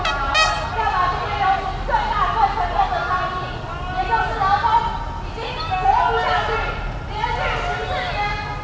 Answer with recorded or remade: recorded